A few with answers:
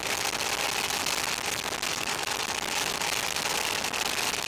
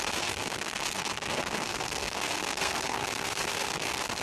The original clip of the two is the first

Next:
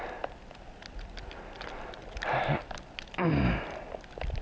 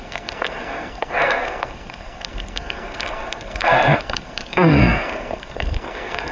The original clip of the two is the first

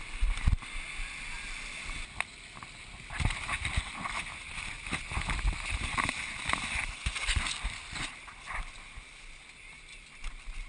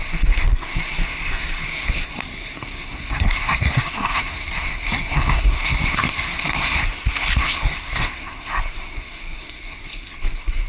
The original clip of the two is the first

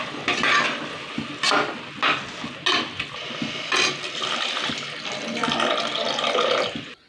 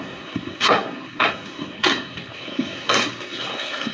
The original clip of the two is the first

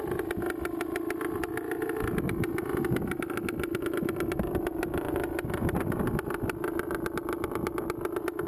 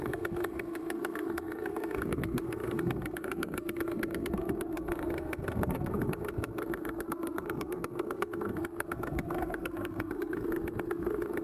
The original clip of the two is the first